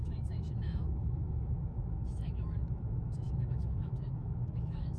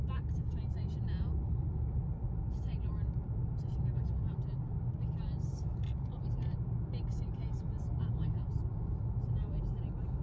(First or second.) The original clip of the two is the second